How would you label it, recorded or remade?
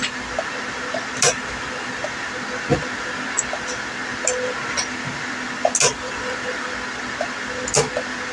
recorded